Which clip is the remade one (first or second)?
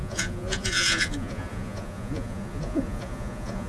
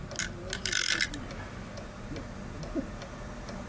first